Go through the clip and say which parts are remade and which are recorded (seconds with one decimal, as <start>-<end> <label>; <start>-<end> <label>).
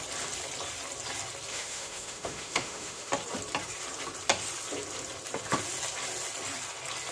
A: 0.0-1.5 recorded; 1.5-3.1 remade; 3.1-7.1 recorded